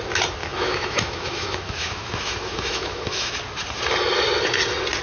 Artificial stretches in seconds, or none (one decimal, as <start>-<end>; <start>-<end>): 0.4-3.4